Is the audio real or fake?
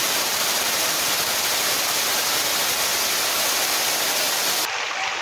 real